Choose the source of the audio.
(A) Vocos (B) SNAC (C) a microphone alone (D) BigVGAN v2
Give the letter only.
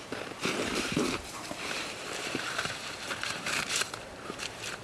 D